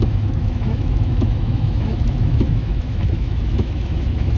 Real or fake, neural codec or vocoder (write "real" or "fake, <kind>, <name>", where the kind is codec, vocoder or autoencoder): fake, autoencoder, DAC-VAE